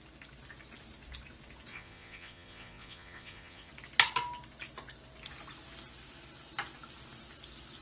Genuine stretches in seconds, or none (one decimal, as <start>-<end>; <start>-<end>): 0.0-1.7; 3.7-7.8